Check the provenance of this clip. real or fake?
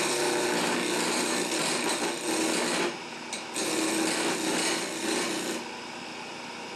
real